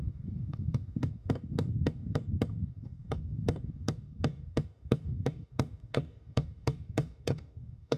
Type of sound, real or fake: fake